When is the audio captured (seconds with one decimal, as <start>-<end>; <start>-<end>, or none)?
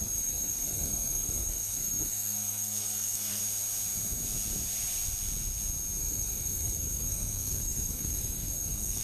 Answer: 3.4-6.0